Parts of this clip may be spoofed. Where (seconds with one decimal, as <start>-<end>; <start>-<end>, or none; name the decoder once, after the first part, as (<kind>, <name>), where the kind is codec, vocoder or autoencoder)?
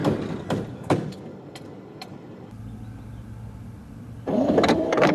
0.7-1.3 (codec, DAC); 4.3-5.1